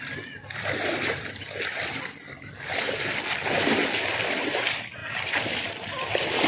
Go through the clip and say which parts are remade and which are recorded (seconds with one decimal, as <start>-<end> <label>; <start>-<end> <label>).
0.0-6.5 recorded